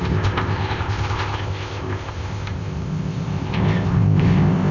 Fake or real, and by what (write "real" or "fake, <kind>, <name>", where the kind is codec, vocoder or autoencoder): fake, codec, ZipCodec